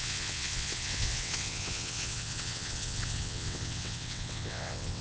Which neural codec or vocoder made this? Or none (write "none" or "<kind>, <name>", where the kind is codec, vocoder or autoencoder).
vocoder, WaveNeXt